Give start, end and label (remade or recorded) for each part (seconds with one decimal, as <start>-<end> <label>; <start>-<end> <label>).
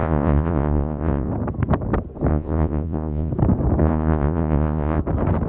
0.0-1.3 remade; 1.3-2.3 recorded; 2.3-3.3 remade; 3.3-3.8 recorded; 3.8-5.0 remade; 5.0-5.5 recorded